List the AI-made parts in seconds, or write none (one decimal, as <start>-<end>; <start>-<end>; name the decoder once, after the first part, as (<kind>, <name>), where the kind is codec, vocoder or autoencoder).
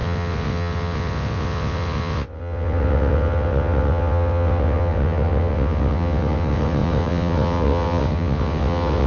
0.0-9.1 (vocoder, WaveNeXt)